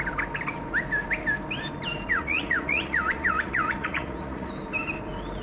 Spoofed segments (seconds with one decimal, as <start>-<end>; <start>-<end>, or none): 2.1-4.5